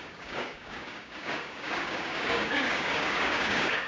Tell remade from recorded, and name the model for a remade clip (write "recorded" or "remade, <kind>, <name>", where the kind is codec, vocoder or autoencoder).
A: remade, codec, DAC